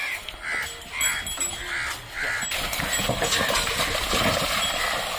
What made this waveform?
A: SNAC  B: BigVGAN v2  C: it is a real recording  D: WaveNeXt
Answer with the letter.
C